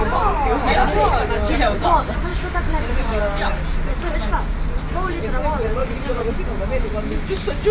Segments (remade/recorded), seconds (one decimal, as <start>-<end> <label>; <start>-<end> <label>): 0.0-2.3 recorded; 2.3-3.0 remade; 3.0-5.8 recorded; 5.8-6.3 remade; 6.3-7.7 recorded